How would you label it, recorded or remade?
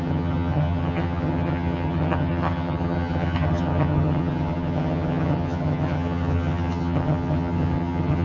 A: remade